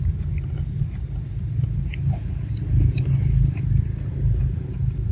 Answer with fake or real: real